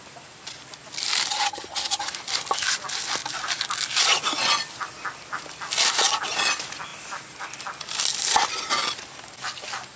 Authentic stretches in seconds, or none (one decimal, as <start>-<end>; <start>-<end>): 0.0-1.3; 2.1-10.0